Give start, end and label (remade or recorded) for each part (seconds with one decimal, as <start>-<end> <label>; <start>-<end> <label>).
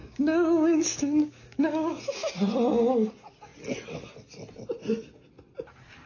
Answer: 0.0-2.3 remade; 2.3-6.1 recorded